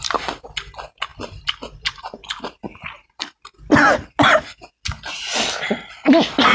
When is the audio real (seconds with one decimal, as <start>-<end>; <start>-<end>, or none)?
0.0-6.5